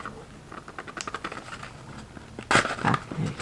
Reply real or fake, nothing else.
real